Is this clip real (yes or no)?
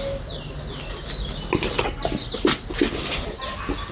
yes